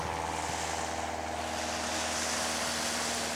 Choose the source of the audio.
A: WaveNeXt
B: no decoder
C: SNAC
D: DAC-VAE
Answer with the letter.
B